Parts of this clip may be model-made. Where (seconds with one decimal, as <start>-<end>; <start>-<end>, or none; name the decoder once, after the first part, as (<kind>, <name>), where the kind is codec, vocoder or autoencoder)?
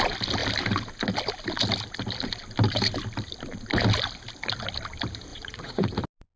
5.3-6.0 (vocoder, Vocos)